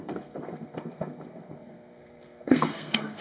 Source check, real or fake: fake